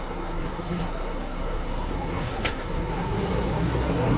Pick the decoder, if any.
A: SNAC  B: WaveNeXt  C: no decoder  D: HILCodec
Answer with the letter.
A